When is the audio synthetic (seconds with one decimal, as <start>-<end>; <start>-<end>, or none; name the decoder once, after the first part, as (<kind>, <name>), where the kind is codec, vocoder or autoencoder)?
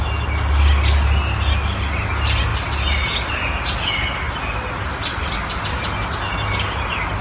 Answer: none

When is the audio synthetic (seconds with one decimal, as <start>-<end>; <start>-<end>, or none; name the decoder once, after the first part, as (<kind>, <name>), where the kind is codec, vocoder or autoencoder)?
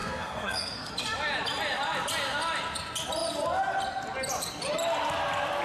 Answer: 0.0-0.9 (codec, SNAC)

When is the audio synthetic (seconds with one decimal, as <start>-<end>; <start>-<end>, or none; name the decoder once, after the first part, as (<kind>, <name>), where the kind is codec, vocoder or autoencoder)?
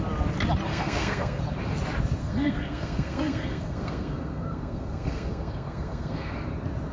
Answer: 0.7-1.4 (codec, SNAC); 2.2-6.3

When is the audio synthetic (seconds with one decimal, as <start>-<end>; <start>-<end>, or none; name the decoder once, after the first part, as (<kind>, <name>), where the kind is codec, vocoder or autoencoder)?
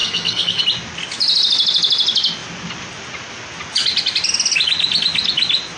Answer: 0.0-0.6 (codec, SNAC)